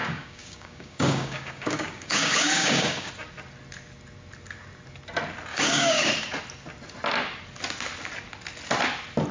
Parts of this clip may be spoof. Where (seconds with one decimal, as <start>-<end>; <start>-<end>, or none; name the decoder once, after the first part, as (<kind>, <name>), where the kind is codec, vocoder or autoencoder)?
0.0-3.1 (codec, DAC); 5.5-6.1